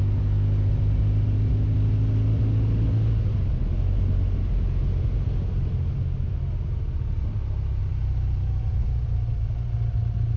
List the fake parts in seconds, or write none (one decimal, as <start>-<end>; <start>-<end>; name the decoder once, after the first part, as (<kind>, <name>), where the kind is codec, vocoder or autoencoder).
7.8-8.8 (vocoder, BigVGAN v2)

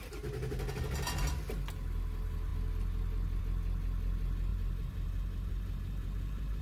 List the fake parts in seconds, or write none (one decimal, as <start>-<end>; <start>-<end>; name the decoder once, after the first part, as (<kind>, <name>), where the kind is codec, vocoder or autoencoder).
4.5-6.6 (vocoder, BigVGAN v2)

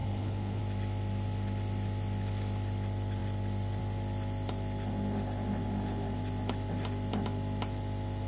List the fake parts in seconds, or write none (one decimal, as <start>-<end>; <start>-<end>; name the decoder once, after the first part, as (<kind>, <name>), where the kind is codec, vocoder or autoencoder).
0.0-0.6 (codec, HILCodec)

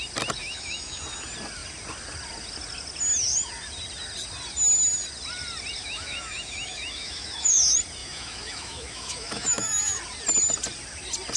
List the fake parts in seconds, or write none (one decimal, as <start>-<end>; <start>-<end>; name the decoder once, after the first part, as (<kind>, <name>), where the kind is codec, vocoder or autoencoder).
0.4-1.0 (autoencoder, DAC-VAE); 5.8-7.6; 8.0-10.0

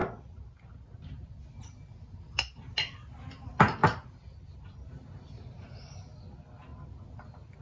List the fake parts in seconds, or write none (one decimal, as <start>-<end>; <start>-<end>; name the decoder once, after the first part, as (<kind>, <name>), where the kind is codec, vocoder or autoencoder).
none

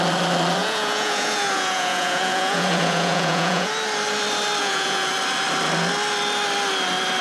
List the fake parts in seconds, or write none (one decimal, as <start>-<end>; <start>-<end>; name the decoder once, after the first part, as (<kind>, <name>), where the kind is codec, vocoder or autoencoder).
0.6-3.7 (vocoder, Vocos); 4.6-5.1

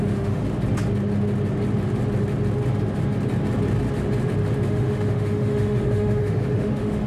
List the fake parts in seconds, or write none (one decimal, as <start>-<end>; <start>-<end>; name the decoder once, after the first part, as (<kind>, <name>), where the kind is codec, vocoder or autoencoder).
0.0-0.4 (autoencoder, DAC-VAE); 4.7-7.1